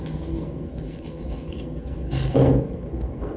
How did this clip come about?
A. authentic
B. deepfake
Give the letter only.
B